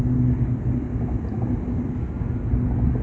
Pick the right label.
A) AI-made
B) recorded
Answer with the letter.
B